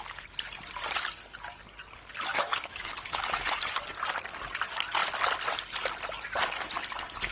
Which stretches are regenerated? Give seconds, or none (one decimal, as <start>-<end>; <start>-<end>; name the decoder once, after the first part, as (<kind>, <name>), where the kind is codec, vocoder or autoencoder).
2.3-3.2 (autoencoder, DAC-VAE)